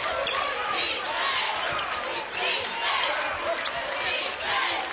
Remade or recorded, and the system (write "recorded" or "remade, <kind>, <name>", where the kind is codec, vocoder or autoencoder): recorded